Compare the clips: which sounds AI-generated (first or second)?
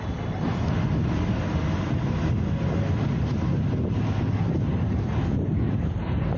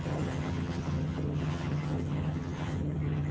second